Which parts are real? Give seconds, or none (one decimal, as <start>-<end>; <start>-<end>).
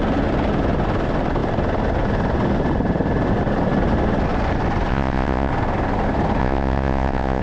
0.0-4.9; 5.5-6.4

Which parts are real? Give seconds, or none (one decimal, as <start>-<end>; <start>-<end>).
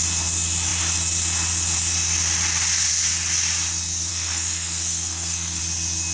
0.0-4.1; 5.6-6.1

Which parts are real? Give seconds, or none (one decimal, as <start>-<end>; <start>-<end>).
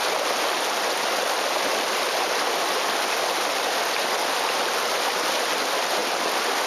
0.0-6.7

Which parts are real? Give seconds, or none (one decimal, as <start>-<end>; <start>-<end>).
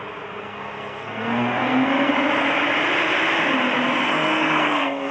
0.0-0.4; 2.1-4.1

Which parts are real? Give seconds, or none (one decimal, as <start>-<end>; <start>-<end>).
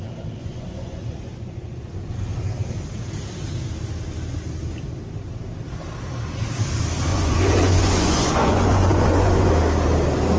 0.0-0.4; 2.1-7.1; 9.5-10.4